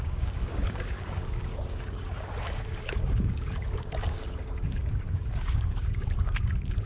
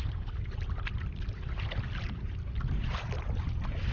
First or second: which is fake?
first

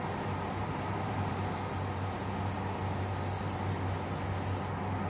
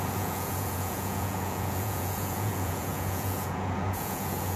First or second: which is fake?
second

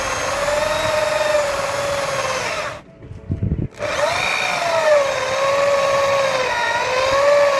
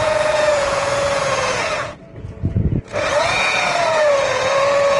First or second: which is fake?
second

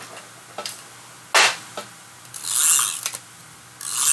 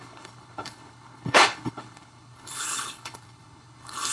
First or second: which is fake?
second